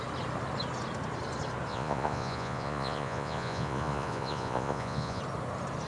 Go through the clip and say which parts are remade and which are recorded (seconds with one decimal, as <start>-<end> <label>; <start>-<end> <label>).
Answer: 0.0-1.7 recorded; 1.7-5.2 remade; 5.2-5.9 recorded